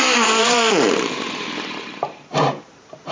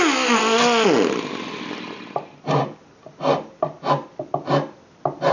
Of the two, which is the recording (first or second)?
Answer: second